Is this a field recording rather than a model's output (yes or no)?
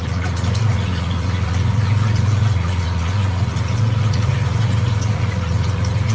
no